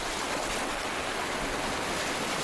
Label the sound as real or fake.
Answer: real